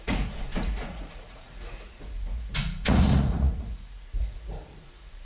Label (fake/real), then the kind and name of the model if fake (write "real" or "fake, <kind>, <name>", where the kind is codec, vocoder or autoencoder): fake, vocoder, Vocos